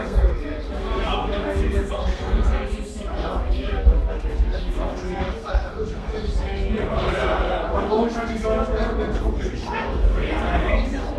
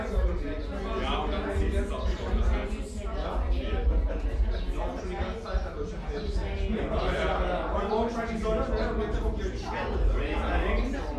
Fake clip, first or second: first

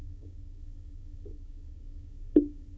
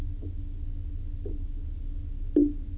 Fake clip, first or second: first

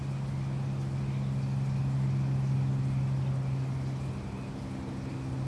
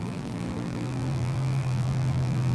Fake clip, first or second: second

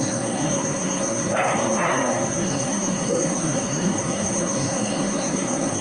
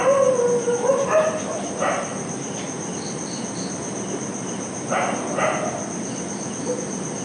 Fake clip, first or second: first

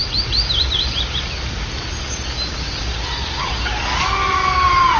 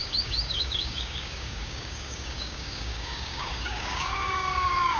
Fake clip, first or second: second